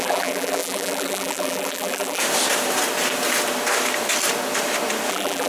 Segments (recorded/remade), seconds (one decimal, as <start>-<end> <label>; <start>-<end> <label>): 0.0-2.2 remade; 2.2-5.1 recorded; 5.1-5.5 remade